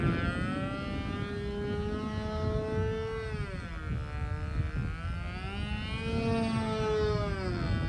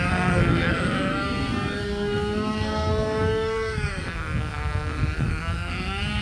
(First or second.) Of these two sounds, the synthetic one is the second